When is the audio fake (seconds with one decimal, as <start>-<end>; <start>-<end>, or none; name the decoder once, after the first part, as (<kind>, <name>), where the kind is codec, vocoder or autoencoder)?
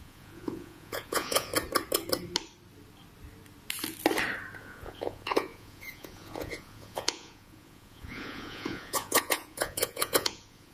0.0-1.5 (vocoder, Vocos); 4.6-10.7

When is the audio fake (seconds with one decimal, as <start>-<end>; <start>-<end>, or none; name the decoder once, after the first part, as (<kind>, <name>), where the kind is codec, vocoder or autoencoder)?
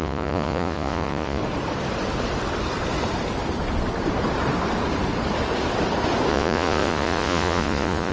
0.0-1.4 (vocoder, Vocos); 6.3-8.1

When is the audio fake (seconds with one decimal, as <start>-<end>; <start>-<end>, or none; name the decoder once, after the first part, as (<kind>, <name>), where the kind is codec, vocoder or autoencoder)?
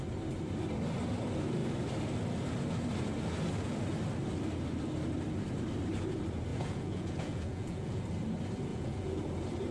6.5-8.0 (vocoder, Vocos); 8.7-9.2